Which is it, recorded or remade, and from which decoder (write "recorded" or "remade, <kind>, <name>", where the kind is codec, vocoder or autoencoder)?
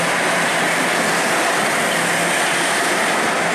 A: recorded